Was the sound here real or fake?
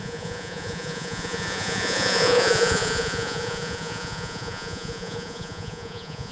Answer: fake